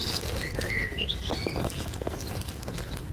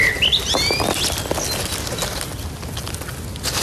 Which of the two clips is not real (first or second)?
first